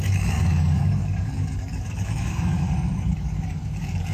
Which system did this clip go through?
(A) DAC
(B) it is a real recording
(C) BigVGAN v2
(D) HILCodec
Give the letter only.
A